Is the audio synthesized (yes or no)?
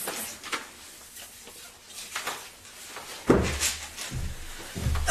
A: no